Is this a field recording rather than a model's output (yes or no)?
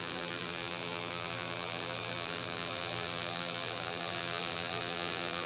no